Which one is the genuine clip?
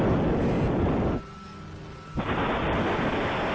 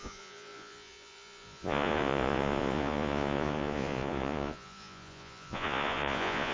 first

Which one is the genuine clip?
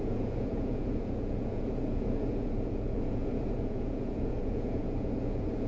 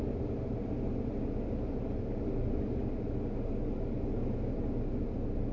second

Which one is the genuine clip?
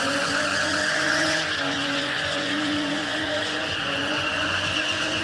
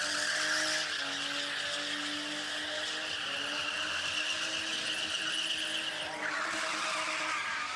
second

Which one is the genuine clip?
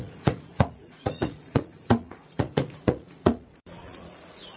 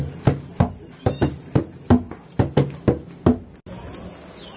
second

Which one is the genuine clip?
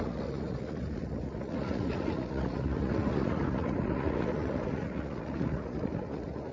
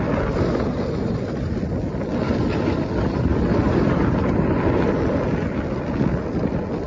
second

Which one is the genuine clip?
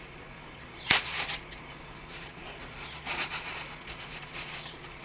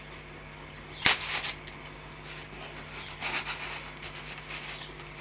second